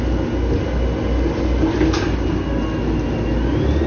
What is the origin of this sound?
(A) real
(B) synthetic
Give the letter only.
A